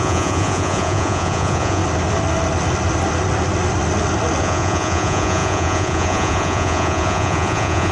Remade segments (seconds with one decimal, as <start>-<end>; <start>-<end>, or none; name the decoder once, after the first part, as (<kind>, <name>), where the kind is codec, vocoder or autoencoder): 0.0-1.8 (vocoder, Vocos); 4.4-7.9